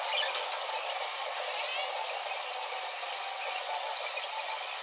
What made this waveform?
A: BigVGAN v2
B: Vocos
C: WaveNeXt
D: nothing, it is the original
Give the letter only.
D